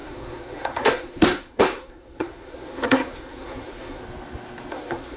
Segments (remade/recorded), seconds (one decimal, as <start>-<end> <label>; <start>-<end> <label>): 0.0-4.0 remade; 4.0-4.7 recorded; 4.7-5.2 remade